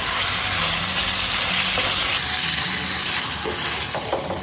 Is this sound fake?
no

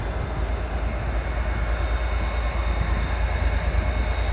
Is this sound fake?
no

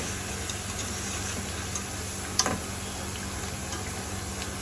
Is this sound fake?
no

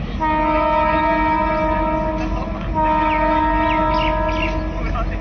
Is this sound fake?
no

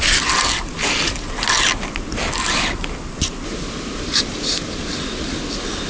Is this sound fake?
no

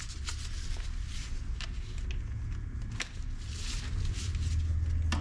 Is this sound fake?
no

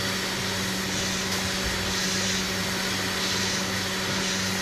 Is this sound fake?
no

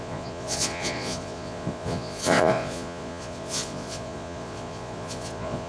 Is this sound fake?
yes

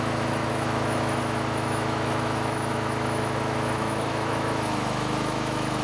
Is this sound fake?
yes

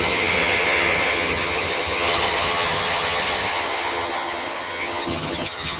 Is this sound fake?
yes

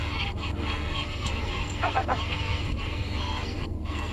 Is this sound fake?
yes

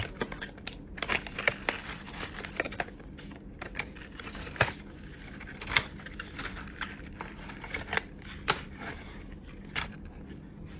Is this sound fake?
yes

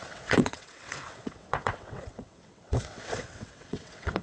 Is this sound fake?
yes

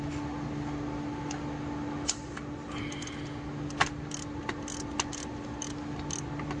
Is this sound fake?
no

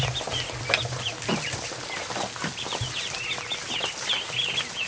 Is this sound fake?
no